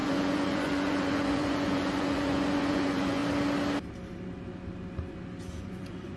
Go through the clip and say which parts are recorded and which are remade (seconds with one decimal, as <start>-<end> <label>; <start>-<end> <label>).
0.0-3.2 remade; 3.2-5.6 recorded; 5.6-6.2 remade